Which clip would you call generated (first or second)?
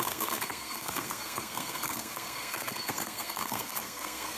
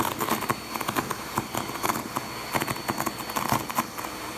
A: first